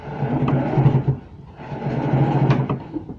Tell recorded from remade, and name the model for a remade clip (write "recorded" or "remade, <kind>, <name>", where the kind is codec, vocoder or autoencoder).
recorded